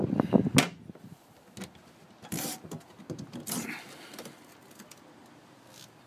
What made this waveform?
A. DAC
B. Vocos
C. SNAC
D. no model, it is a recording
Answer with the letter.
D